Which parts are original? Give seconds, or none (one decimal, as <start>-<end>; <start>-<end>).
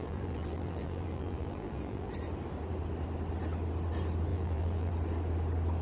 2.1-4.3; 4.9-5.8